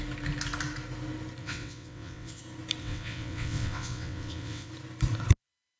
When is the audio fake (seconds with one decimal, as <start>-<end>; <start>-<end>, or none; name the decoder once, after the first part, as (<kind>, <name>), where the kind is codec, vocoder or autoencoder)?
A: 1.4-2.4 (vocoder, WaveNeXt); 2.8-4.7